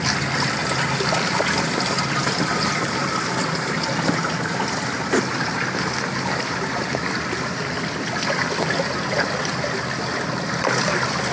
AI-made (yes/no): no